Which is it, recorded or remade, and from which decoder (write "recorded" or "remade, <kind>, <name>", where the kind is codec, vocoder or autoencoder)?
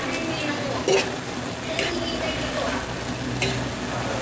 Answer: recorded